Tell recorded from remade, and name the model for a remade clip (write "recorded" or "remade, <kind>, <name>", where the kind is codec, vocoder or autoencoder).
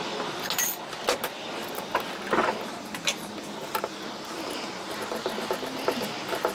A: recorded